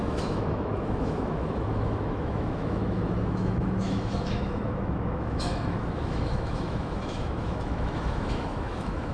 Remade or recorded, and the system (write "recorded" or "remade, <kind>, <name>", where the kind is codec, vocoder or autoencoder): remade, autoencoder, DAC-VAE